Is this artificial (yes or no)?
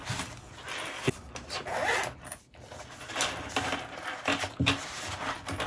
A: no